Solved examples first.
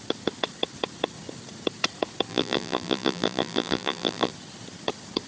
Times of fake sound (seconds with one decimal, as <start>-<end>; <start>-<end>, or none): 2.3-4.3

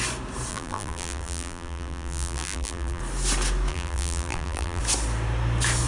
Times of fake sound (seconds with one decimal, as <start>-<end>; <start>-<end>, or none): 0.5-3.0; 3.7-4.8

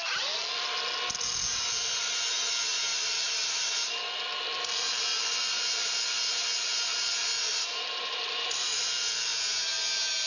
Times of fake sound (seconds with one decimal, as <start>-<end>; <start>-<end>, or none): 2.9-3.6; 7.5-8.8